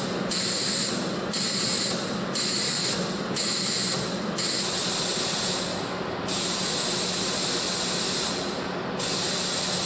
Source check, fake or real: real